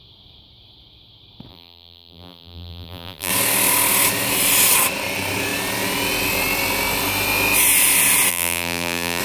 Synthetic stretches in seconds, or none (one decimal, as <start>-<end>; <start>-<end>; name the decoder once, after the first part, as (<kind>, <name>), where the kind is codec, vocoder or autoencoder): 1.5-3.3 (vocoder, BigVGAN v2); 8.3-9.2